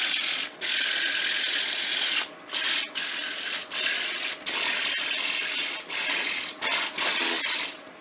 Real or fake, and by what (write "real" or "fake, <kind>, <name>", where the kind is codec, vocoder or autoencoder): real